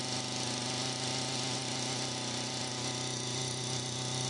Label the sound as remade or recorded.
recorded